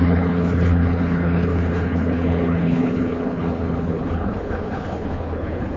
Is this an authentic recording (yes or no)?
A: no